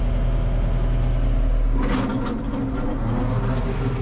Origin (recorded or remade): recorded